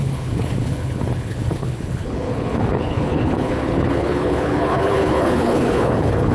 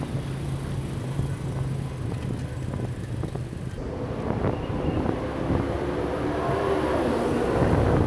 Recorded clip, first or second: second